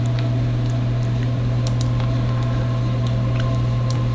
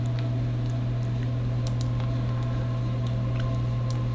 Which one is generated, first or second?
first